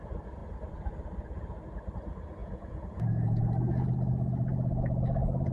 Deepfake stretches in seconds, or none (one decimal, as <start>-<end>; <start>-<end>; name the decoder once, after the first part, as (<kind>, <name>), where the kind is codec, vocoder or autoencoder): 2.4-3.4 (vocoder, Vocos)